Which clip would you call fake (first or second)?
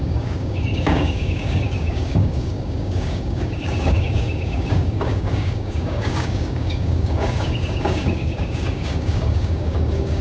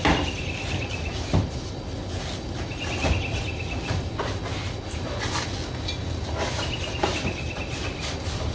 first